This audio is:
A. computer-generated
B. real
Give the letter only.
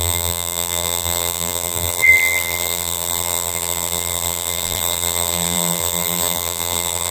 A